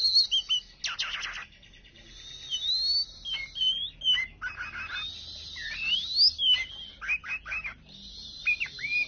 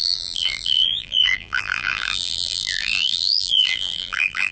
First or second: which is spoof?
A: second